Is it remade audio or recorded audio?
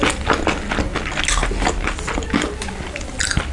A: recorded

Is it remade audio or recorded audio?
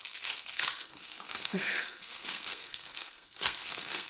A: remade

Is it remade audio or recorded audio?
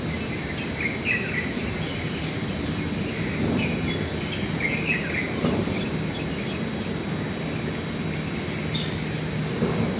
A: recorded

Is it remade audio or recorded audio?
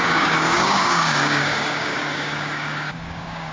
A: remade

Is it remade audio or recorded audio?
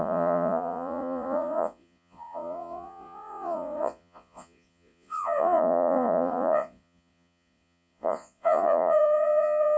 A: remade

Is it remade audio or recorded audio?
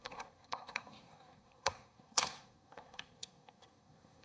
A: remade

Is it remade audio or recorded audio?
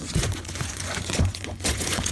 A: remade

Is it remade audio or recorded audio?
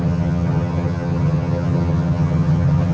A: remade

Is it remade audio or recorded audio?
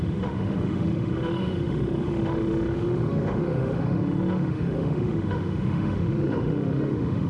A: remade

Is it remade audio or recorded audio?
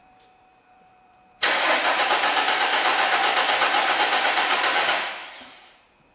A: remade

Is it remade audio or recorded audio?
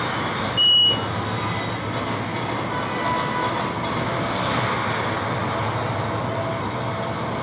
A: recorded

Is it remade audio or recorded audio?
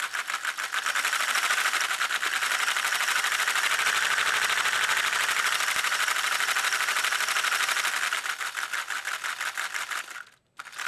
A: recorded